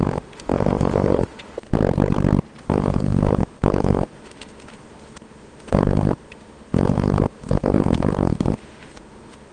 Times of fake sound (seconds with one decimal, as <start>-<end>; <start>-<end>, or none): 0.0-1.7; 2.6-9.5